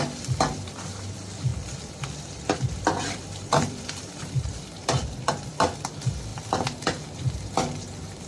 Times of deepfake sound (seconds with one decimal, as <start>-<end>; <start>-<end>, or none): 0.0-6.3